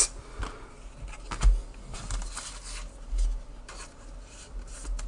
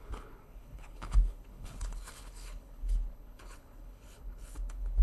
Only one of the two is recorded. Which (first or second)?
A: first